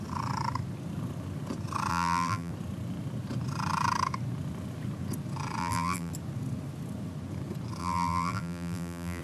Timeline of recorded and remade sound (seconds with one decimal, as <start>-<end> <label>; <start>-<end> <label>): 0.0-1.9 recorded; 1.9-2.5 remade; 2.5-5.6 recorded; 5.6-6.1 remade; 6.1-7.8 recorded; 7.8-9.2 remade